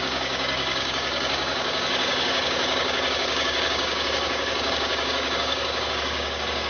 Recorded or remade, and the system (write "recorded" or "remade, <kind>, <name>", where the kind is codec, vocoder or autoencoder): remade, codec, DAC